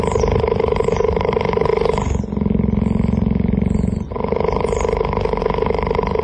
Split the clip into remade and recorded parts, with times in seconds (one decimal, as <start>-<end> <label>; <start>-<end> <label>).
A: 0.0-6.2 recorded